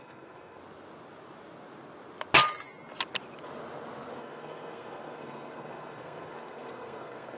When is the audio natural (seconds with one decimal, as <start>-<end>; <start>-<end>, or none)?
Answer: 0.6-4.2